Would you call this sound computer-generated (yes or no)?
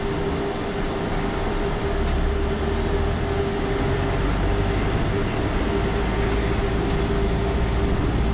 no